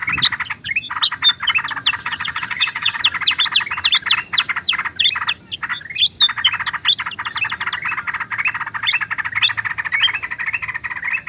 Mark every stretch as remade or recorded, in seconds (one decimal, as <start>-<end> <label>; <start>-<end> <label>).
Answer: 0.0-2.0 recorded; 2.0-3.0 remade; 3.0-11.3 recorded